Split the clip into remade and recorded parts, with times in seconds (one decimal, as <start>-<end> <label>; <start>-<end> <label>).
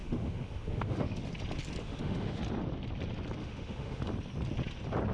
0.0-1.2 remade; 1.2-1.8 recorded; 1.8-2.4 remade; 2.4-3.4 recorded; 3.4-4.0 remade; 4.0-5.1 recorded